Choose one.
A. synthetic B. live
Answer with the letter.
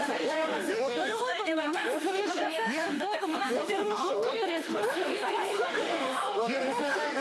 A